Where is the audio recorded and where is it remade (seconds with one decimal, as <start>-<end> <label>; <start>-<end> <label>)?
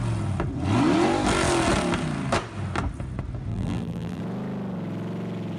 0.0-3.5 recorded; 3.5-4.2 remade; 4.2-5.6 recorded